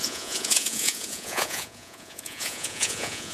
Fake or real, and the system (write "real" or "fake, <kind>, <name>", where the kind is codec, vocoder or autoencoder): fake, vocoder, Vocos